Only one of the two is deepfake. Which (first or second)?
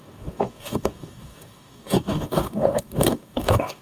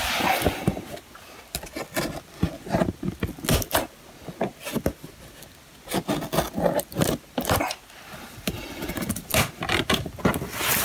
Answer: first